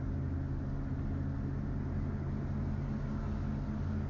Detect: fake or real real